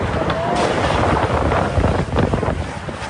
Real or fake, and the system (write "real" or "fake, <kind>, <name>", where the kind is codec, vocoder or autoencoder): real